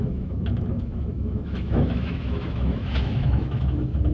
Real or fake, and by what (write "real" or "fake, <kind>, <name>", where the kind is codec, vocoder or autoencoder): fake, autoencoder, DAC-VAE